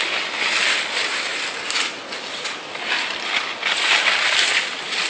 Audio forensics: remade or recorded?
recorded